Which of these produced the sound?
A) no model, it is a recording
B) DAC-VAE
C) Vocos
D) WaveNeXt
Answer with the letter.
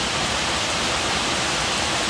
A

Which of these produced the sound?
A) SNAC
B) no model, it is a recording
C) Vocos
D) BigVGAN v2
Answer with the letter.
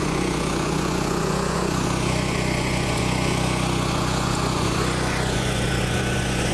C